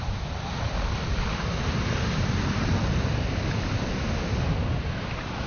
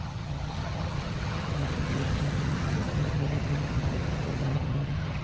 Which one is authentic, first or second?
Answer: first